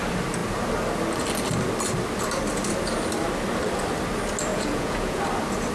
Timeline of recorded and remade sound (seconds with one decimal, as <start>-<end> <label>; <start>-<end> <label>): 0.0-4.5 recorded; 4.5-5.2 remade; 5.2-5.7 recorded